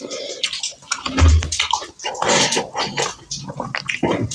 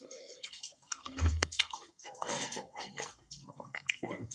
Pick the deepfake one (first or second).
second